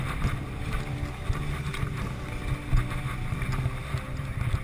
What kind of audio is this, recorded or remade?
recorded